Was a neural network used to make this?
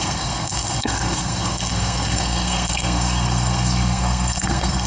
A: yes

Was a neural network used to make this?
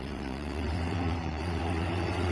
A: yes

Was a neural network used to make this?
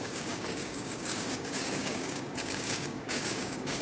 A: yes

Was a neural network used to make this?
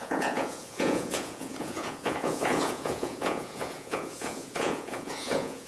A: yes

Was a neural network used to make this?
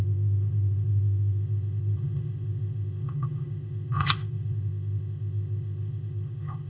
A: yes